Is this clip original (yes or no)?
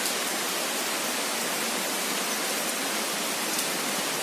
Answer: yes